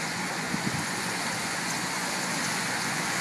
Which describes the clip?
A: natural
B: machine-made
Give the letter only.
B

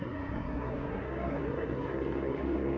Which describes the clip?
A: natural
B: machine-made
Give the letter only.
B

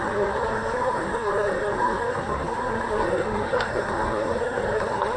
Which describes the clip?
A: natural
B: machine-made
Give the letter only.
B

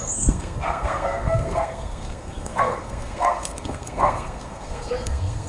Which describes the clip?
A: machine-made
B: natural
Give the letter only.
A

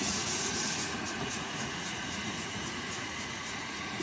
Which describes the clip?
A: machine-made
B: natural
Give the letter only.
A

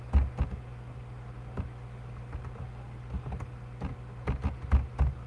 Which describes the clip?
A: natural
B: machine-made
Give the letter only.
A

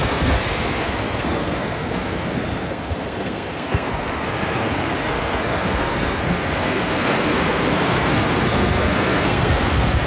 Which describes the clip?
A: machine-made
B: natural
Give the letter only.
A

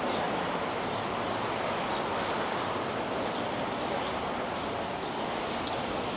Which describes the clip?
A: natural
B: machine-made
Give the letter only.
A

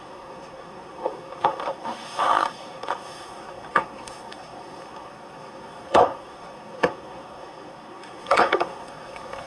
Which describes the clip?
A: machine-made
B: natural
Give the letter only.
A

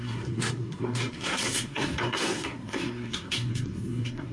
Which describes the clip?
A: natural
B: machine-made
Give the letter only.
B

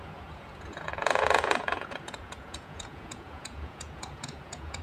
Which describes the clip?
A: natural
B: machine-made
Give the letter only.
B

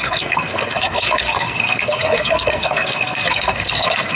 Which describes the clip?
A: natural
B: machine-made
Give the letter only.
B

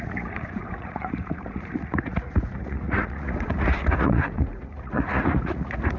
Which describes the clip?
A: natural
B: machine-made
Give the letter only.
B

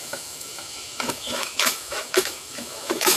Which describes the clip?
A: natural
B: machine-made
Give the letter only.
B